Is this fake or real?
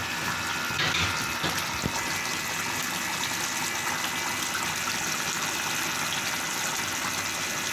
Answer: real